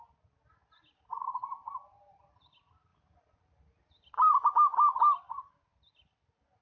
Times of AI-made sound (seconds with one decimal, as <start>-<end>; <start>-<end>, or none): none